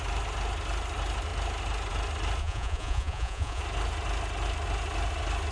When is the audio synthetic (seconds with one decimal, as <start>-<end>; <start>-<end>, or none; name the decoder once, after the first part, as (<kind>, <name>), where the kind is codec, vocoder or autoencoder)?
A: 2.4-3.6 (vocoder, Vocos)